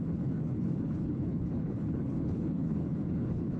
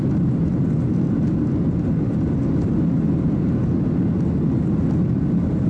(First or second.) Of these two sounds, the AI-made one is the first